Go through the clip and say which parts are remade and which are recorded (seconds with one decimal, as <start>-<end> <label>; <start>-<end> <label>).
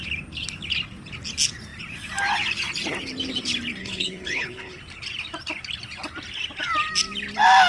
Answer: 0.0-3.8 recorded; 3.8-4.7 remade; 4.7-7.7 recorded